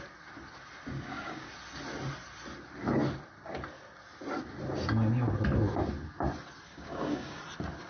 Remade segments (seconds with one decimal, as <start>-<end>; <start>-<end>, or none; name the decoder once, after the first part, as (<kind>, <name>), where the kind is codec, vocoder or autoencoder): 0.9-1.5 (codec, DAC); 6.7-7.4